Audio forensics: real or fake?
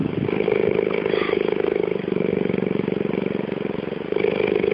real